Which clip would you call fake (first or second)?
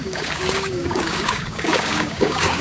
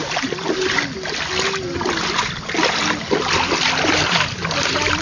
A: first